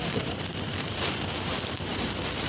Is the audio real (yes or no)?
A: no